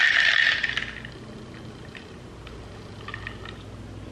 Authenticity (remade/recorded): recorded